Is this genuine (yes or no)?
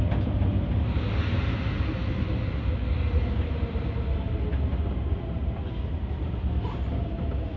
yes